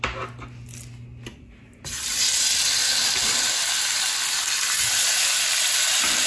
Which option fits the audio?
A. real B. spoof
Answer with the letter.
A